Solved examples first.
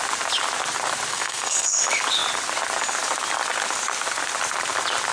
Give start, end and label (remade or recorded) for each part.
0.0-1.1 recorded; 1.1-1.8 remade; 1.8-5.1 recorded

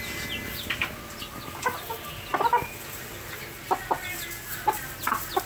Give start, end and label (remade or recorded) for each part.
0.0-5.5 recorded

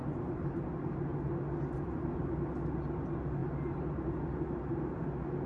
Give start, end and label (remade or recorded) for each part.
0.0-5.5 recorded

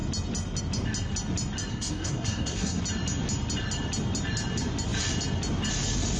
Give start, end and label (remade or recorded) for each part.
0.0-1.7 recorded; 1.7-2.8 remade; 2.8-6.2 recorded

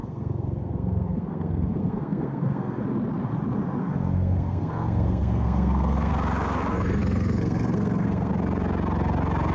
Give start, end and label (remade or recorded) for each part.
0.0-2.8 remade; 2.8-3.8 recorded; 3.8-6.1 remade; 6.1-6.7 recorded; 6.7-8.3 remade; 8.3-9.5 recorded

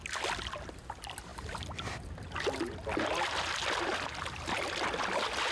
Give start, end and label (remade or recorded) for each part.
0.0-5.5 recorded

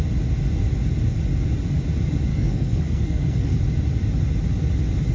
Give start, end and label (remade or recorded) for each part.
0.0-2.3 recorded; 2.3-3.6 remade; 3.6-5.1 recorded